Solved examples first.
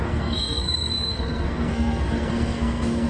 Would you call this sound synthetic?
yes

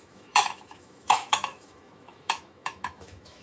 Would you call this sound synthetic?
yes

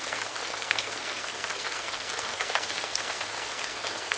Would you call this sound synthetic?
yes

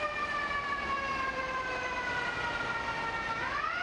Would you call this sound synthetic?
yes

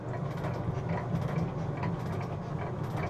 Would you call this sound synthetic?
no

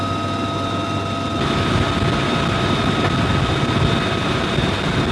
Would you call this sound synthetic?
no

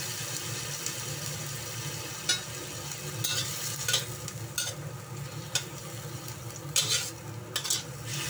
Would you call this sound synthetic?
no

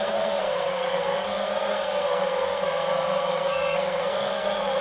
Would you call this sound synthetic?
yes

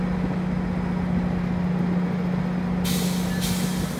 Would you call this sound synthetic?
no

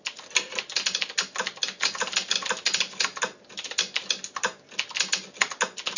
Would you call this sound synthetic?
no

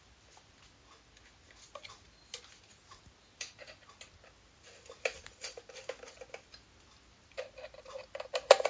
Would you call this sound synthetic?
no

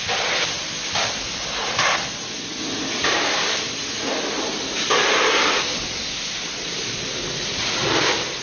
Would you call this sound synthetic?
no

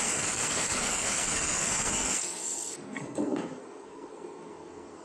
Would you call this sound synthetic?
yes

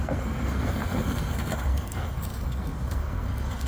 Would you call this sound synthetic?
yes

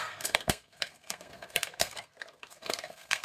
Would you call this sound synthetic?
yes